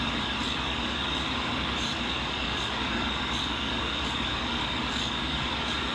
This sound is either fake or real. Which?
fake